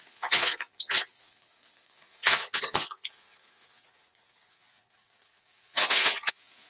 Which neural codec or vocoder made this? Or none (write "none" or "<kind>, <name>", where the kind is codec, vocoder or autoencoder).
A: vocoder, Vocos